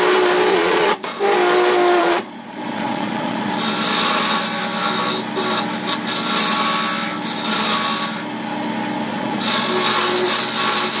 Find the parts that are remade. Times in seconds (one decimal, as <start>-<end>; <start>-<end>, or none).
0.5-1.2; 2.0-3.5; 9.1-9.7